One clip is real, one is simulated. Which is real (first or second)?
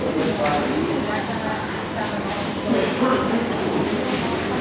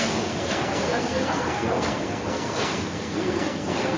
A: first